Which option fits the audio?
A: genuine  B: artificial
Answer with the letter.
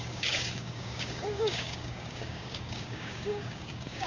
B